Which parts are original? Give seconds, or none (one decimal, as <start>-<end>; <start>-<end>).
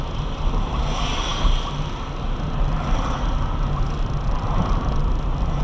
0.0-5.6